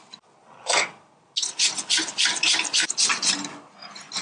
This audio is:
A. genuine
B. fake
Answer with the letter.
A